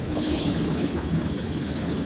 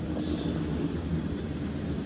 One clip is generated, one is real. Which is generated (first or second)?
first